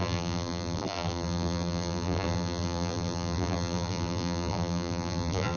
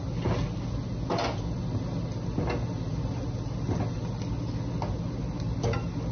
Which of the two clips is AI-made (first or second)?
first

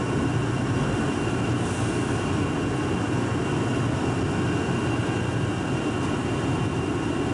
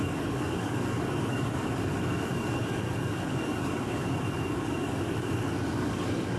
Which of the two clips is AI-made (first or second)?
second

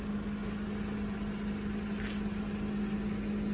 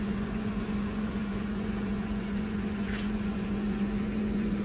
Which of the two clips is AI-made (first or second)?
second